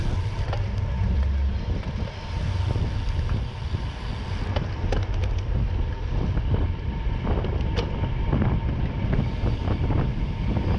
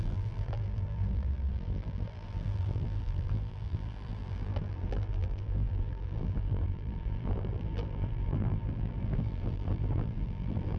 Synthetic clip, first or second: second